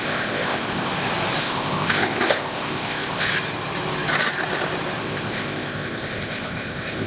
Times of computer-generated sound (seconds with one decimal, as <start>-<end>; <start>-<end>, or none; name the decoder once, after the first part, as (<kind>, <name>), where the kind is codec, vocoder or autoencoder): 0.0-0.9 (codec, ZipCodec); 1.4-3.3; 5.0-7.1